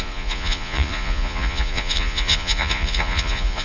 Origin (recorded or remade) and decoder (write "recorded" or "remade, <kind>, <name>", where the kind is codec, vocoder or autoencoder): remade, vocoder, Vocos